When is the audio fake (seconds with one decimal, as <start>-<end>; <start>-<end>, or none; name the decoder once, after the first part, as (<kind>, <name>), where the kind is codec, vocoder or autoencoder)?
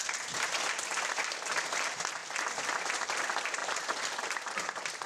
none